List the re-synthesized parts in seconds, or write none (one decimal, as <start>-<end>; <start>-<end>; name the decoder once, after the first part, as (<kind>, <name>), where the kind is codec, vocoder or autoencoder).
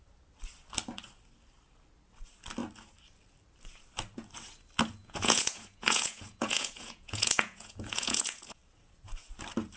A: 5.0-8.6 (vocoder, Vocos)